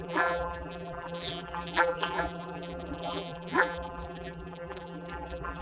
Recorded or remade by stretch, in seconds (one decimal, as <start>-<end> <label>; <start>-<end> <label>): 0.0-5.6 remade